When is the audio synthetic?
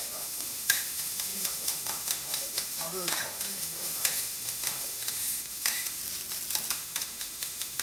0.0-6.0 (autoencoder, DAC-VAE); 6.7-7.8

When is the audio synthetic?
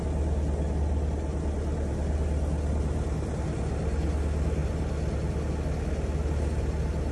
none